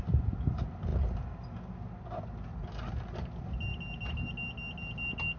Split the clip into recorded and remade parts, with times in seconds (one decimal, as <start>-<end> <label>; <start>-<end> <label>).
0.0-5.4 recorded